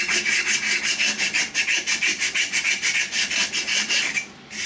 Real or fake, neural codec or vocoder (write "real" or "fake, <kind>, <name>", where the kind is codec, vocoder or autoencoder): real